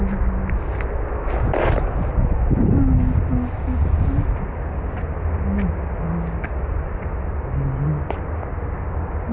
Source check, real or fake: real